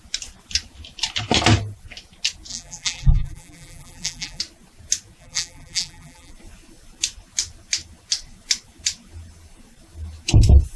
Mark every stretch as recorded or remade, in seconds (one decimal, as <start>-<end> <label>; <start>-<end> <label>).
0.0-2.5 recorded; 2.5-4.4 remade; 4.4-5.2 recorded; 5.2-6.3 remade; 6.3-10.8 recorded